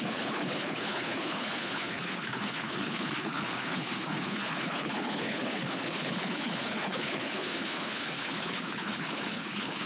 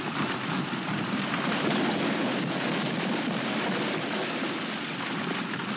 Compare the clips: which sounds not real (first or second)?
first